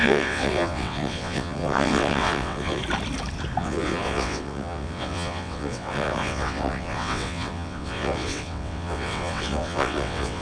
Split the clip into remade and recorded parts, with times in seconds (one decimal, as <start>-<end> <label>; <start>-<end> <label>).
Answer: 0.0-2.8 remade; 2.8-3.6 recorded; 3.6-10.4 remade